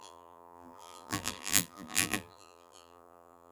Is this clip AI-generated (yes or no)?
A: yes